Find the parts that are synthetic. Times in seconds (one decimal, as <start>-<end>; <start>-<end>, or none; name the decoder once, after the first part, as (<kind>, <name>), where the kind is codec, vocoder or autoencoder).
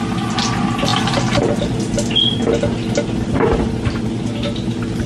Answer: none